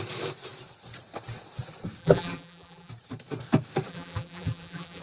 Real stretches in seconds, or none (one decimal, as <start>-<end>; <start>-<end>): 0.0-2.0; 2.9-3.9